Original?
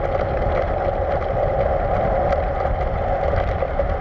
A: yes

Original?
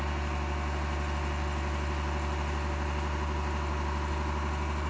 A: yes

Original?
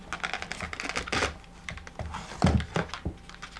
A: yes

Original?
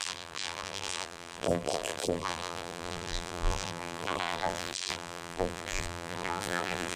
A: no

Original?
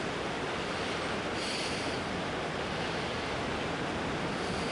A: yes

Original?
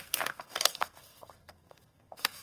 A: no